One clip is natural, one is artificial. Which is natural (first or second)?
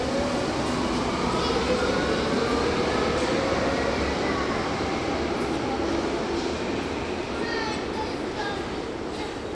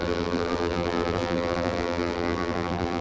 first